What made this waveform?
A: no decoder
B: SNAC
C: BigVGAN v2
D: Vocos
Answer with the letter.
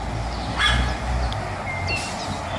A